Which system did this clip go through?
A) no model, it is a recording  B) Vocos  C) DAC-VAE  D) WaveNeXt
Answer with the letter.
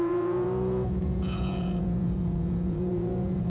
B